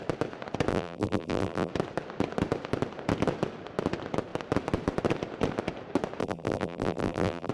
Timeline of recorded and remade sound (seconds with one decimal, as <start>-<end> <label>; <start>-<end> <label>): 0.0-0.7 recorded; 0.7-1.7 remade; 1.7-6.2 recorded; 6.2-7.5 remade